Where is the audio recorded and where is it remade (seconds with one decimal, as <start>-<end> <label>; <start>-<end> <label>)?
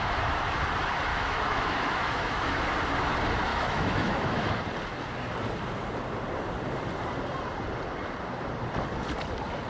0.0-1.1 recorded; 1.1-2.4 remade; 2.4-3.5 recorded; 3.5-4.6 remade; 4.6-9.7 recorded